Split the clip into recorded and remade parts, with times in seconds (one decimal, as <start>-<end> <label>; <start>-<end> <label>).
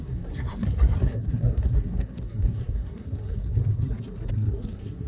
0.0-3.6 remade; 3.6-4.3 recorded; 4.3-5.1 remade